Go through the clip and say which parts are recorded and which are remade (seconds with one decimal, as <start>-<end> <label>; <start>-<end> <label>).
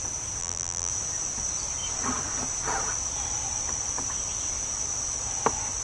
0.0-0.4 recorded; 0.4-0.9 remade; 0.9-5.8 recorded